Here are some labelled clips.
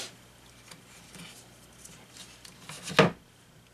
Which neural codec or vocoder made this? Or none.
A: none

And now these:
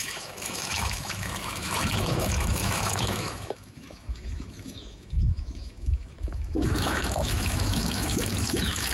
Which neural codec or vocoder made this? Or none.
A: autoencoder, DAC-VAE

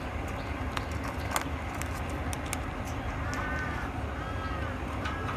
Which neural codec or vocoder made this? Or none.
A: none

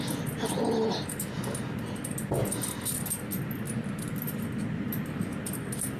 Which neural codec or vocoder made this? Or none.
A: none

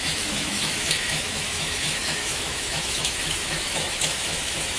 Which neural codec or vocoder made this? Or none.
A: autoencoder, DAC-VAE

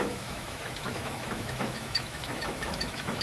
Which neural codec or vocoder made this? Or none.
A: autoencoder, DAC-VAE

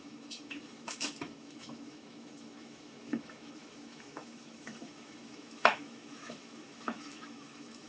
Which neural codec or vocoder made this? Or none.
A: autoencoder, DAC-VAE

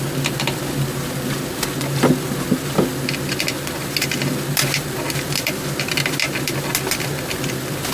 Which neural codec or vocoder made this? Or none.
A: none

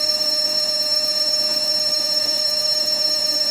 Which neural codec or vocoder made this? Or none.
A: autoencoder, DAC-VAE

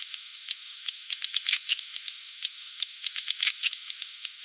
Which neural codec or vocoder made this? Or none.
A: autoencoder, DAC-VAE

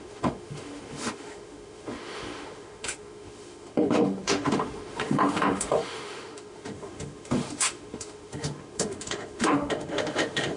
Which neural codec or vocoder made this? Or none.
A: autoencoder, DAC-VAE